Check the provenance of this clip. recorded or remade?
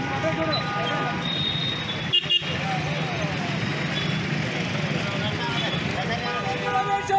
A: recorded